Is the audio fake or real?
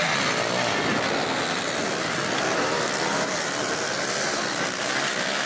real